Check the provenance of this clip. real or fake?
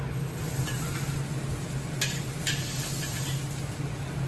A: real